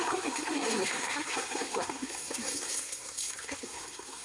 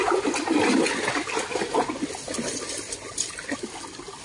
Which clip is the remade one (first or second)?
first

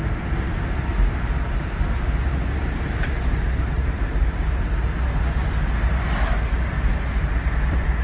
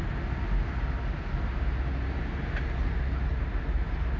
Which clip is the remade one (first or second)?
first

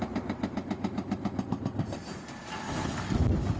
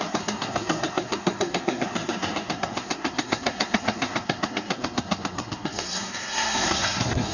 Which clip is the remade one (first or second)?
second